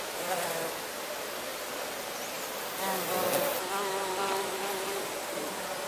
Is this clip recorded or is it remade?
recorded